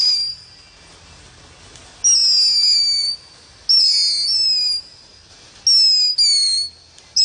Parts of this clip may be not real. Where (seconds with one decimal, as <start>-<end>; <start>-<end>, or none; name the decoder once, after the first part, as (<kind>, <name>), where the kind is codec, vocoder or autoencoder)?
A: none